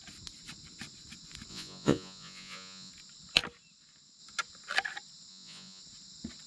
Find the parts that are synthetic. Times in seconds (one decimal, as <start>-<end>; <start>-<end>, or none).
1.5-2.9; 5.3-5.8